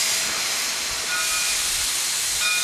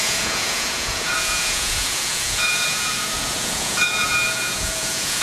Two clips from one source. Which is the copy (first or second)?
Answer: second